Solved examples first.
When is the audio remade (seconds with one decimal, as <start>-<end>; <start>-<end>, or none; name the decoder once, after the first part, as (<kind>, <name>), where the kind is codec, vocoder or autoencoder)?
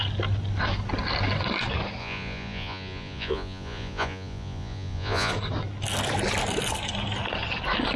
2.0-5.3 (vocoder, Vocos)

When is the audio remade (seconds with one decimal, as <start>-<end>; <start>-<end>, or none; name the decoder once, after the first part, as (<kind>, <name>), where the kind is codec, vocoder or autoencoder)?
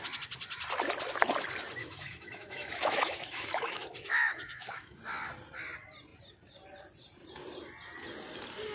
1.8-5.0 (autoencoder, DAC-VAE)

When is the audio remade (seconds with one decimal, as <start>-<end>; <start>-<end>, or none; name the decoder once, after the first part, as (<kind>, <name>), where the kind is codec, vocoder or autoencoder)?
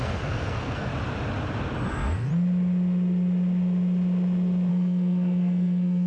0.0-0.9 (codec, SNAC); 1.9-2.3; 4.7-6.1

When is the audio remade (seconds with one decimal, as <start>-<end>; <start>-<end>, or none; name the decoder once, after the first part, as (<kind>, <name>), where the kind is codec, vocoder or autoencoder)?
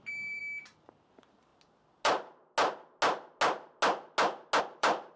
0.0-0.4 (vocoder, BigVGAN v2); 1.1-1.5; 4.6-5.2